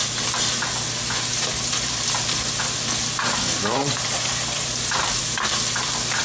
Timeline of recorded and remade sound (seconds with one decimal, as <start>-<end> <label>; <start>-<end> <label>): 0.0-1.3 recorded; 1.3-2.6 remade; 2.6-3.8 recorded; 3.8-4.8 remade; 4.8-6.2 recorded